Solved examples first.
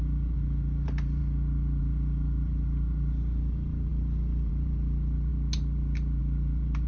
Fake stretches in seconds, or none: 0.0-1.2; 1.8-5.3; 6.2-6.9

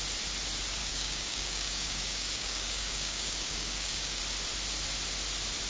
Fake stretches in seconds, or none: 0.8-4.2

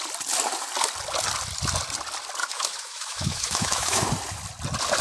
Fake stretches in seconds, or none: 2.4-4.1

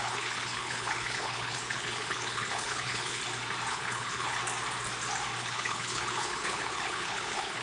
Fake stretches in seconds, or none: 0.0-3.2; 3.7-4.4; 5.4-7.6

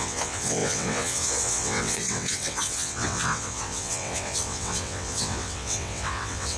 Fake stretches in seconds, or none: 0.0-6.6

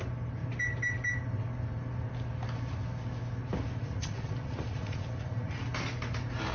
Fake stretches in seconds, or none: 3.8-5.6

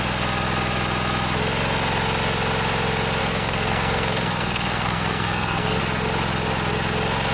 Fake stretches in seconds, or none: 3.2-5.8

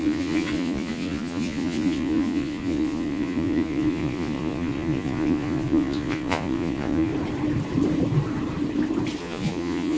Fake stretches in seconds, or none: 0.0-7.1; 9.2-10.0